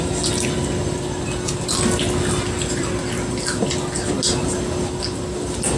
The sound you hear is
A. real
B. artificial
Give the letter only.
A